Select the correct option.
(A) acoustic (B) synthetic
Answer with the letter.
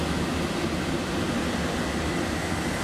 A